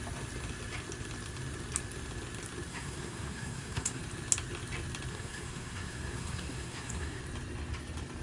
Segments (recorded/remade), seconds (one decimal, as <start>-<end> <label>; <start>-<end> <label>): 0.0-2.7 recorded; 2.7-4.0 remade; 4.0-5.1 recorded; 5.1-7.2 remade; 7.2-8.2 recorded